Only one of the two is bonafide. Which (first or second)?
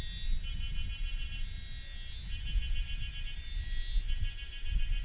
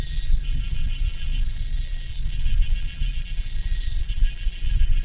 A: first